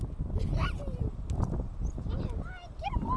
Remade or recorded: recorded